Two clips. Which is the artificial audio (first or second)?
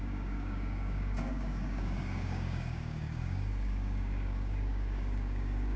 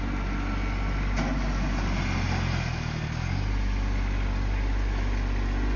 first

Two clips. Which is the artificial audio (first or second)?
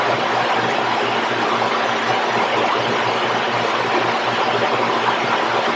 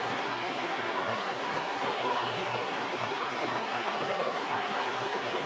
second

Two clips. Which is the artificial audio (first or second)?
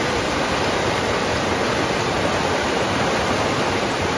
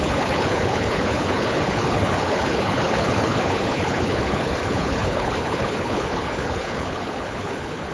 second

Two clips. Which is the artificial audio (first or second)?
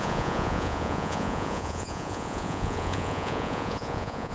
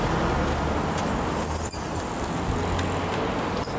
first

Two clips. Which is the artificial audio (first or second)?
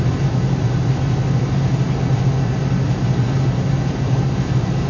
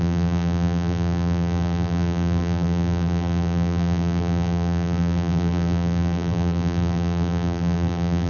second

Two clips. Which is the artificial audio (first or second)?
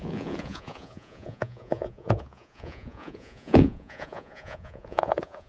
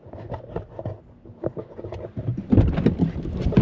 first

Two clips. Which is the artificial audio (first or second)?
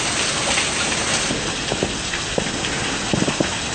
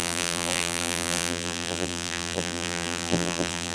second